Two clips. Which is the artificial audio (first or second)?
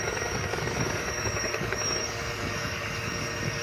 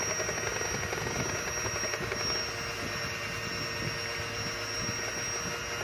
first